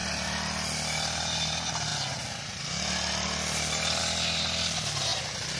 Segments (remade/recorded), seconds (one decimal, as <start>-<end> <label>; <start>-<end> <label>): 0.0-5.6 recorded